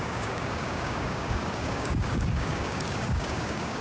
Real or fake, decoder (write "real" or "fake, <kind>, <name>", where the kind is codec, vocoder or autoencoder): fake, codec, DAC